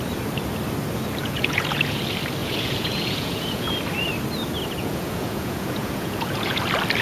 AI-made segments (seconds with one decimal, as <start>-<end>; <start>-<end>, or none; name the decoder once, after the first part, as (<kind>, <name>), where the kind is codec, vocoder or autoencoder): 1.2-2.0 (vocoder, Vocos); 2.4-3.7; 4.8-6.6